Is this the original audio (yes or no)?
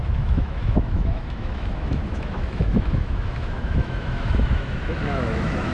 no